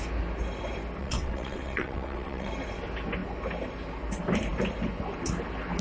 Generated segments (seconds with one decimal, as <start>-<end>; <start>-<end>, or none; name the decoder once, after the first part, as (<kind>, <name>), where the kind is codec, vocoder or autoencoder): 1.0-2.5 (vocoder, WaveNeXt)